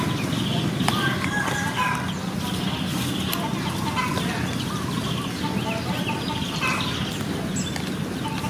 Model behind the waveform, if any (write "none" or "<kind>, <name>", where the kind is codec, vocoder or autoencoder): none